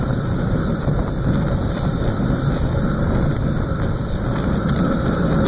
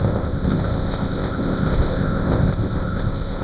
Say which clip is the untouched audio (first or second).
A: first